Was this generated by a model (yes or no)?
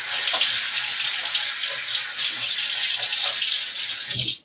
no